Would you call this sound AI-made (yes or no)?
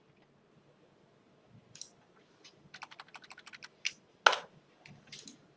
no